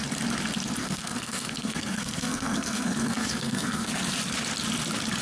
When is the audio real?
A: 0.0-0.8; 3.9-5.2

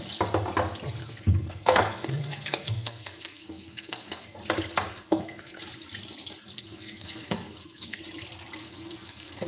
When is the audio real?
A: 0.0-1.0; 4.4-4.9; 5.6-6.5; 8.0-8.6

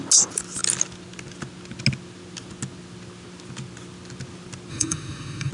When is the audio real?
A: 0.0-4.7

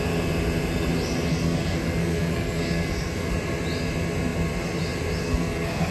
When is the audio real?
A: 0.0-1.3; 3.3-5.2

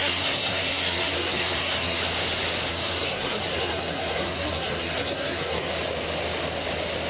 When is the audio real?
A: 2.0-2.7; 5.7-7.1

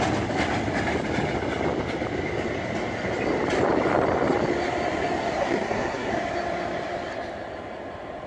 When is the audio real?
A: 0.0-5.4; 6.1-8.3

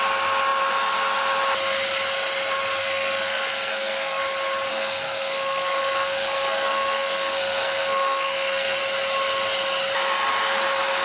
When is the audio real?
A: 0.0-2.8; 4.2-4.7; 8.8-11.0

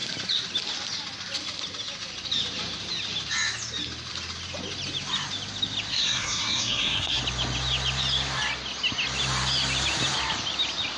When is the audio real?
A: 0.0-5.9; 7.2-11.0